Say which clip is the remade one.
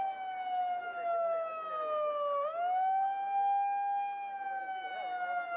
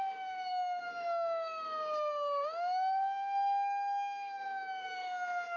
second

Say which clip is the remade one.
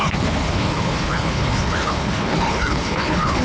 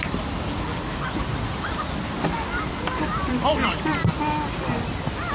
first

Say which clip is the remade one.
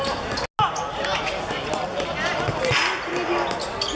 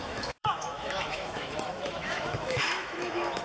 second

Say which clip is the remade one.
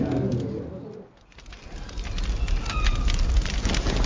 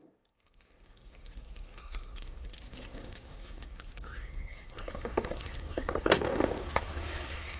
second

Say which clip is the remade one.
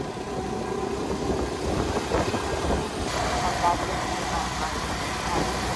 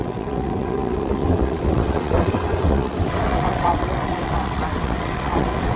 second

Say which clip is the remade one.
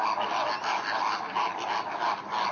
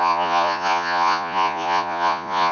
second